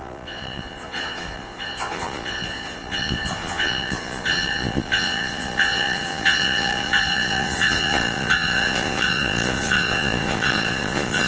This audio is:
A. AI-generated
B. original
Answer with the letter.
A